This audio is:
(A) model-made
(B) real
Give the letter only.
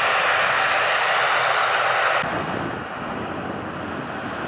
B